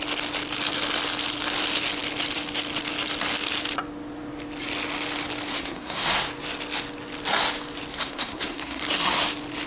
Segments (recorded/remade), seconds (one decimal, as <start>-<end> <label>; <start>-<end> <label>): 0.0-5.5 recorded; 5.5-6.3 remade; 6.3-7.9 recorded; 7.9-8.8 remade; 8.8-9.7 recorded